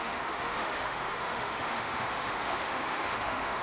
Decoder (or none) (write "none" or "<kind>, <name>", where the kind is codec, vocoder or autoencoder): autoencoder, DAC-VAE